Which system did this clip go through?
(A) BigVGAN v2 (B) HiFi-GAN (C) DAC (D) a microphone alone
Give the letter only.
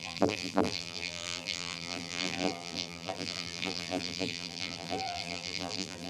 A